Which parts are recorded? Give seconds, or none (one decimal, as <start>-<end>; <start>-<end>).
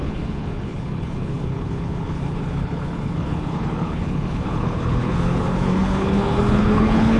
none